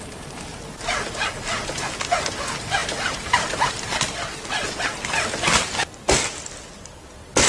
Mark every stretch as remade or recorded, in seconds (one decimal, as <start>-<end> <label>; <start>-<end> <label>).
0.0-7.5 recorded